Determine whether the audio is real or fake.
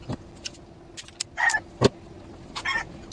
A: real